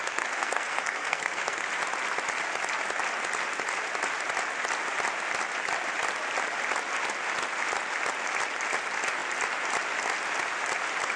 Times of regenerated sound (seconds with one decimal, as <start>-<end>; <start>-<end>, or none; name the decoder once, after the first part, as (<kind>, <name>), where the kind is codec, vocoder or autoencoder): 0.0-1.7 (codec, SNAC)